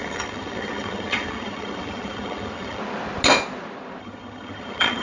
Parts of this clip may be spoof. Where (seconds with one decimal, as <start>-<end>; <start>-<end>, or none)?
0.0-2.8; 4.0-5.0